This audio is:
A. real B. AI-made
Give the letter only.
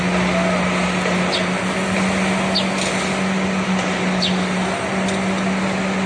A